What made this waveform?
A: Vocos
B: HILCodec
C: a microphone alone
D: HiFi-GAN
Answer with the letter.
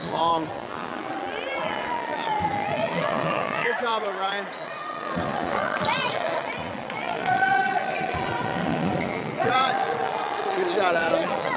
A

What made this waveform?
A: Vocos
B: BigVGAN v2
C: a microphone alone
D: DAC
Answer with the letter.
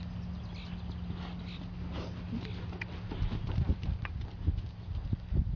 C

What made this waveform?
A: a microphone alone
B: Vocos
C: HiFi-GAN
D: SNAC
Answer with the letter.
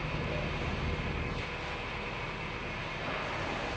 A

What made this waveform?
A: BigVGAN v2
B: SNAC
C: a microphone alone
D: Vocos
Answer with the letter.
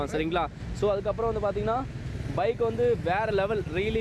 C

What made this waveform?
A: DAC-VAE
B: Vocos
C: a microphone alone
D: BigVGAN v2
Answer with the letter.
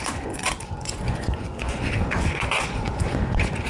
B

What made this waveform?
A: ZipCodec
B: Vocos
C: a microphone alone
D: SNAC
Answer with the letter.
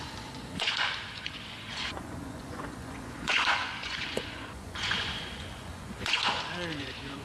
B